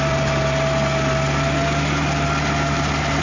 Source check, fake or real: real